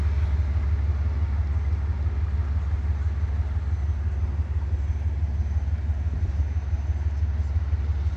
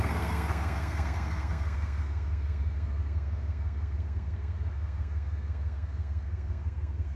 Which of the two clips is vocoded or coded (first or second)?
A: second